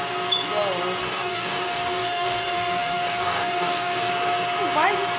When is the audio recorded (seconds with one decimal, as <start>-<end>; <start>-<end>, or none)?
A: 0.0-1.0; 4.1-5.2